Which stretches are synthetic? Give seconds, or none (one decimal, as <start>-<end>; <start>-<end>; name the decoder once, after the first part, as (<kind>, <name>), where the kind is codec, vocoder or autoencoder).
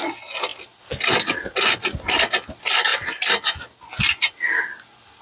none